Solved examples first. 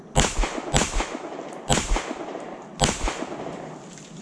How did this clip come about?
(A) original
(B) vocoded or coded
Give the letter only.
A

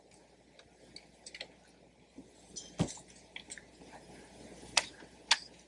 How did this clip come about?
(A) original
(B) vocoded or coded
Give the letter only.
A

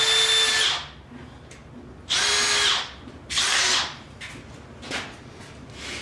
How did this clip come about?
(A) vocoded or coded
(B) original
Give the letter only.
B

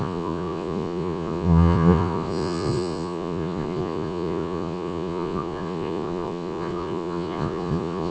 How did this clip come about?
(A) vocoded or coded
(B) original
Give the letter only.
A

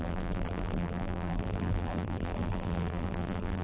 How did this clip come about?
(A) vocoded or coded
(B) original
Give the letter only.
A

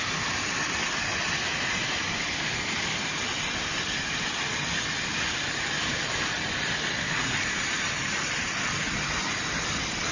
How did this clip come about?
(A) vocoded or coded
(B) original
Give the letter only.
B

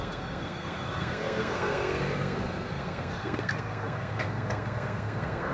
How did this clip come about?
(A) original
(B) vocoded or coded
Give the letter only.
B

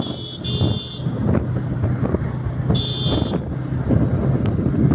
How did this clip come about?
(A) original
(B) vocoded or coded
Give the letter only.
A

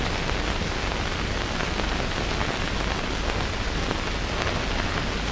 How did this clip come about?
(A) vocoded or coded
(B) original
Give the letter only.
B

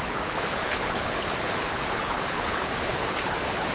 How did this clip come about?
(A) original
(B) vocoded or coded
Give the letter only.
B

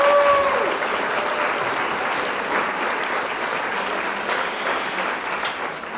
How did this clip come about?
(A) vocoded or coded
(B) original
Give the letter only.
B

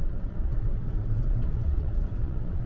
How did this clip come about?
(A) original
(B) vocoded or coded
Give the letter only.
B